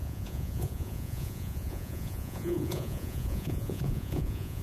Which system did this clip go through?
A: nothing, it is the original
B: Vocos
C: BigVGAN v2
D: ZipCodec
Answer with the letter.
B